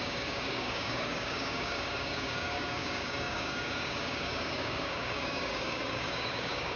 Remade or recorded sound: remade